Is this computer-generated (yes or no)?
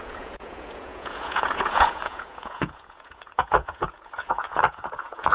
yes